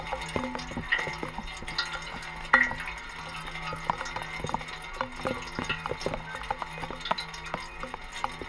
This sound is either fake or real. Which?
real